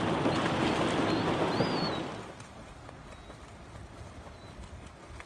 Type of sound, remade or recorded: recorded